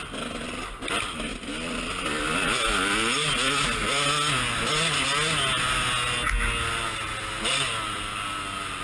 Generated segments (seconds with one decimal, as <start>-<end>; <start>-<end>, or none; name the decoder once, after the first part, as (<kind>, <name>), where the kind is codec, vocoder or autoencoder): none